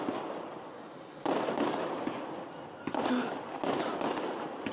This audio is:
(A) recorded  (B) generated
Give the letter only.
A